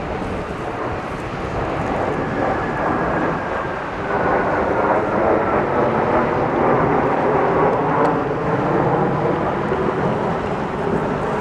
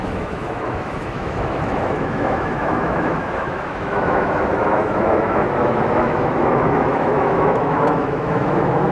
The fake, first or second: second